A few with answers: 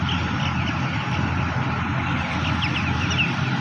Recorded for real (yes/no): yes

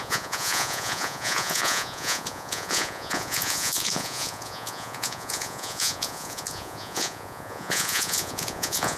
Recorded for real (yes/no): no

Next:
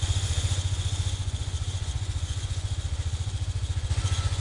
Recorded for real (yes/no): no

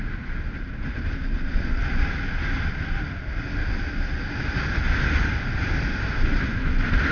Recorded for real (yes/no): yes